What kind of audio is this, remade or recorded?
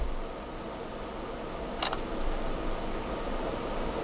recorded